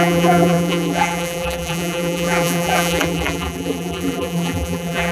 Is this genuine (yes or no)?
no